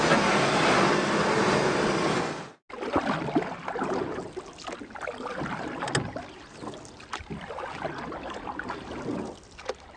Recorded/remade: recorded